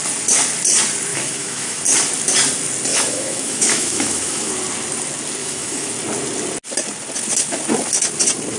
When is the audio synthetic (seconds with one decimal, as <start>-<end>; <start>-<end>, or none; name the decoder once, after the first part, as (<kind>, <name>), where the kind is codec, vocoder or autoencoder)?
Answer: 1.1-1.8 (autoencoder, DAC-VAE); 2.9-4.5; 5.4-5.9